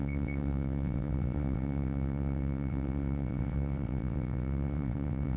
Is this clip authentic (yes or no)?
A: no